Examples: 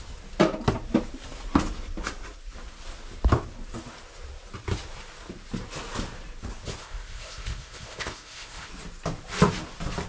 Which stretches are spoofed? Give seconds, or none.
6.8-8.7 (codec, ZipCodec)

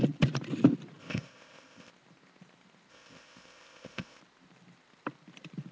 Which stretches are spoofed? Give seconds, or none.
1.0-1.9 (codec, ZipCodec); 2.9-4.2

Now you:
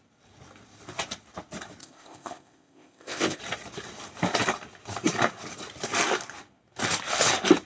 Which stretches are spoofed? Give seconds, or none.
1.8-3.4 (codec, ZipCodec)

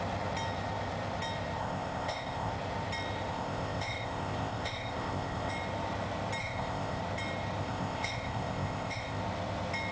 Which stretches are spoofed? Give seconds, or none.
1.6-2.5 (codec, ZipCodec); 3.3-5.5; 6.4-7.0; 7.6-9.2

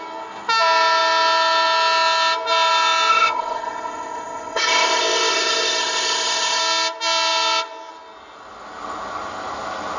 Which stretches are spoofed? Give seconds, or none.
3.1-6.6 (codec, ZipCodec)